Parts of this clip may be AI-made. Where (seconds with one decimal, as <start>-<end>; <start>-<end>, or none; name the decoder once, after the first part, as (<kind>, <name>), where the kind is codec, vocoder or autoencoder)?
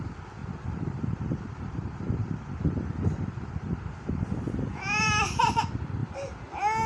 0.0-0.4 (vocoder, BigVGAN v2); 4.5-6.0